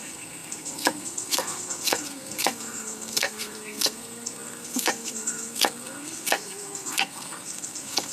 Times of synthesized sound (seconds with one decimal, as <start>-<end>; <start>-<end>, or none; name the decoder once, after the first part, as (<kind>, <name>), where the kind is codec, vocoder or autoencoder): 0.0-8.1 (codec, SNAC)